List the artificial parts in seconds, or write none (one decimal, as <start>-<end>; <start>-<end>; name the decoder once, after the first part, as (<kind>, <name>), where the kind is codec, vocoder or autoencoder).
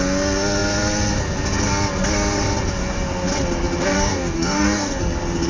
3.8-5.0 (codec, DAC)